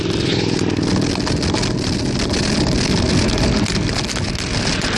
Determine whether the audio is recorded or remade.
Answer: recorded